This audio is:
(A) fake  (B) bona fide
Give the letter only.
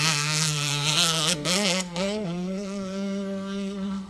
A